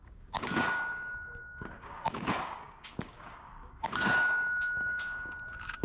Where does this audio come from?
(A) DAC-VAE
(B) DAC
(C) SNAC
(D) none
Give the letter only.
B